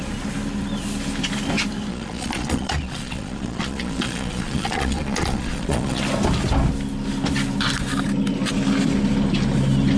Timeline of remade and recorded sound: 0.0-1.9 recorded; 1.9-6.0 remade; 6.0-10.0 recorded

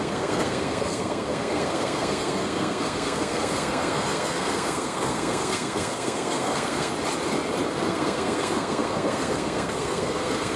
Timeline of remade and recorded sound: 0.0-6.9 remade; 6.9-7.7 recorded; 7.7-10.6 remade

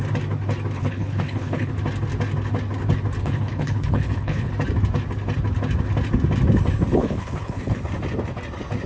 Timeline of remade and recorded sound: 0.0-0.8 recorded; 0.8-1.7 remade; 1.7-3.2 recorded; 3.2-4.5 remade; 4.5-6.9 recorded; 6.9-7.8 remade; 7.8-8.9 recorded

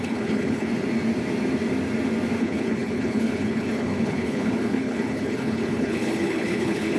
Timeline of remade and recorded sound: 0.0-0.7 remade; 0.7-2.4 recorded; 2.4-7.0 remade

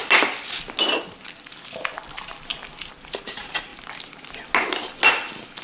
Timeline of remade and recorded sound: 0.0-2.9 recorded; 2.9-3.7 remade; 3.7-5.6 recorded

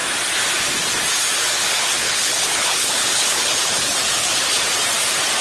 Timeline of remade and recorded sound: 0.0-1.4 recorded; 1.4-4.6 remade; 4.6-5.4 recorded

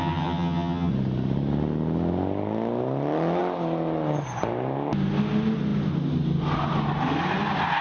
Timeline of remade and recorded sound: 0.0-0.9 remade; 0.9-7.8 recorded